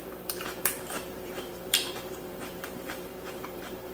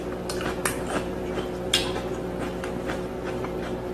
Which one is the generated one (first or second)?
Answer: first